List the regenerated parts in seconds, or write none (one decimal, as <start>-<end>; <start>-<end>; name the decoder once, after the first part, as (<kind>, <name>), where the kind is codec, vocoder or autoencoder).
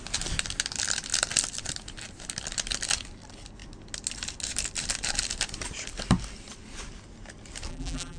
7.7-8.2 (vocoder, BigVGAN v2)